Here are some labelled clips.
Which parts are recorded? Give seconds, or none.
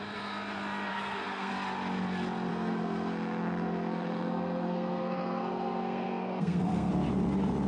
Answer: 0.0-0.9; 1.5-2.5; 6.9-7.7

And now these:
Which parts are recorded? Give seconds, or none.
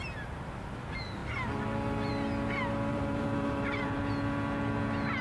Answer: 0.0-2.9; 4.0-5.2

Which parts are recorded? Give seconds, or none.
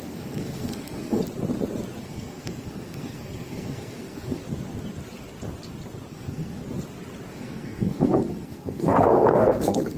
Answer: 1.2-2.0; 4.4-6.1; 6.6-7.3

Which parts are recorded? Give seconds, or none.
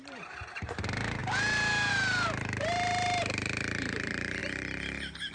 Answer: 1.2-1.9; 4.4-5.3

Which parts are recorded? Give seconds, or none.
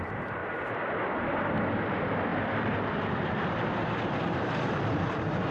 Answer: 0.4-1.7